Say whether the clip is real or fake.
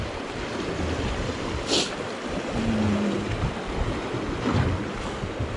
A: real